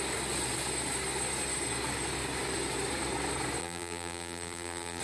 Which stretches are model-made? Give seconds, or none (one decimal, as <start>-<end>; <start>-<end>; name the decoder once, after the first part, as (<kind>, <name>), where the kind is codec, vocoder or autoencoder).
3.6-5.0 (vocoder, BigVGAN v2)